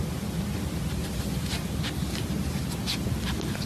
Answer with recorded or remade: recorded